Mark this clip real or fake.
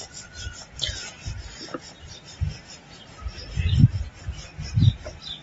real